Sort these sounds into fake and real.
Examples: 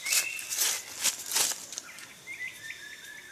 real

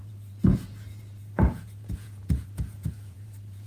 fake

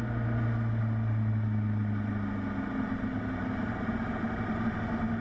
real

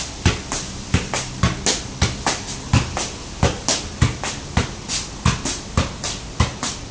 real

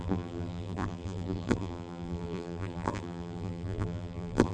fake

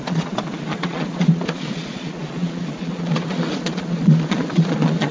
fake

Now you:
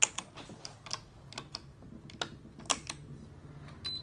real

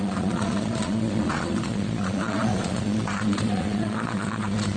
fake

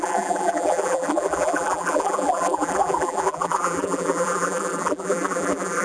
fake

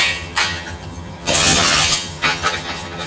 fake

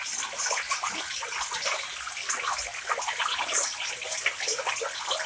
real